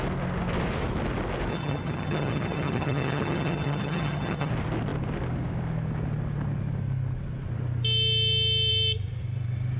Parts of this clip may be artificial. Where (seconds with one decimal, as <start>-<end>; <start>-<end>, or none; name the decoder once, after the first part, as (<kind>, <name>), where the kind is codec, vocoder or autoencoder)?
1.5-4.5 (vocoder, HiFi-GAN)